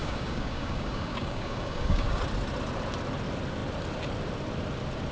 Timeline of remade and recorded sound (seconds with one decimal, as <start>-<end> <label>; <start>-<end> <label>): 0.0-2.2 remade; 2.2-5.1 recorded